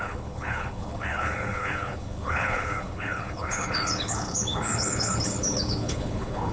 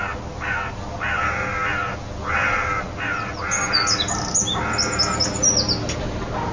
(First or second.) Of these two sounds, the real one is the second